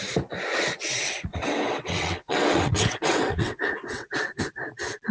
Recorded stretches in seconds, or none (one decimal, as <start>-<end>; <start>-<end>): 0.0-1.3; 4.4-5.1